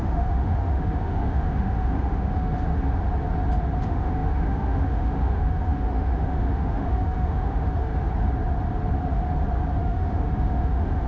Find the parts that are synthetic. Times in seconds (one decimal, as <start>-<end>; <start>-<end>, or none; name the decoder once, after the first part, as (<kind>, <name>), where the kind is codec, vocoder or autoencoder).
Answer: 0.0-2.7 (autoencoder, DAC-VAE); 3.8-7.9; 9.8-11.1